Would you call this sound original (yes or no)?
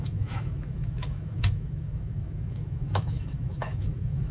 no